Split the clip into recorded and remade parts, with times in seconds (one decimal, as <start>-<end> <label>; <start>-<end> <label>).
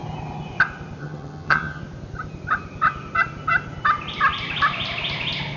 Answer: 0.0-1.0 recorded; 1.0-1.8 remade; 1.8-5.6 recorded